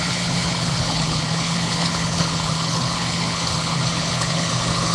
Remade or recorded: remade